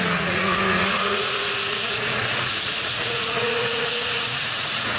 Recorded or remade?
remade